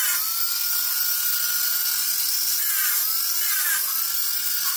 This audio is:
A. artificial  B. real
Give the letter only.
B